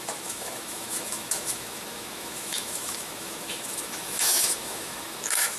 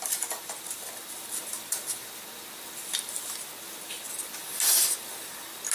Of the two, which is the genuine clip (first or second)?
second